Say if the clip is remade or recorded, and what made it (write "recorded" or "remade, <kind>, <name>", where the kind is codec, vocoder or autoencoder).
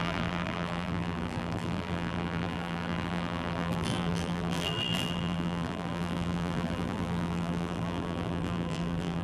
remade, vocoder, BigVGAN v2